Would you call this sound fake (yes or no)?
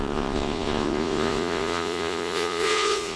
yes